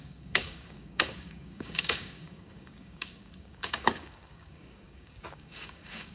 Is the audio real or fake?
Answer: fake